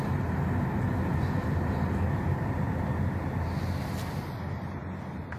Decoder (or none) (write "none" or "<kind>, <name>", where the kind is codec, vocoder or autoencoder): none